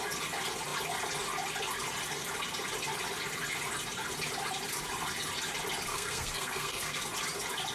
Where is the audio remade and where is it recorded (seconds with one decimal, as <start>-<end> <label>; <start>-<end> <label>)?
0.0-5.9 recorded; 5.9-7.0 remade; 7.0-7.7 recorded